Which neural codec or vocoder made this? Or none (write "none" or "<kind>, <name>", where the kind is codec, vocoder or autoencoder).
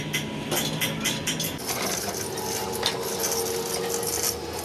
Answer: none